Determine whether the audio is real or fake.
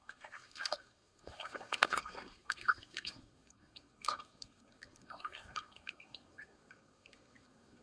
fake